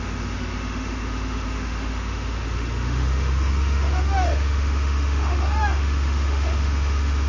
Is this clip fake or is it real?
fake